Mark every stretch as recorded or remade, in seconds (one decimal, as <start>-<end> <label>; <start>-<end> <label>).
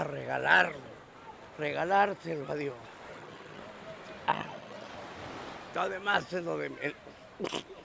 0.0-3.1 recorded; 3.1-3.6 remade; 3.6-4.3 recorded; 4.3-4.9 remade; 4.9-7.8 recorded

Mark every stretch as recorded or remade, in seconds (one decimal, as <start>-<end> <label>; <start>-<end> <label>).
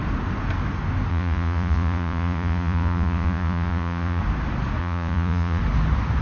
0.0-1.1 recorded; 1.1-4.2 remade; 4.2-4.8 recorded; 4.8-5.6 remade; 5.6-6.2 recorded